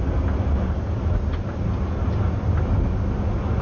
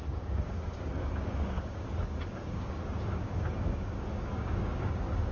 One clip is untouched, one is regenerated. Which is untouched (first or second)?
first